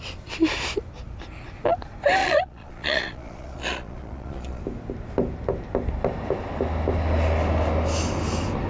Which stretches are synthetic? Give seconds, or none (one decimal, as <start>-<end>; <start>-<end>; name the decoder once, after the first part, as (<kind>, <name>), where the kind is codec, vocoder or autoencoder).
2.2-4.6 (vocoder, Vocos)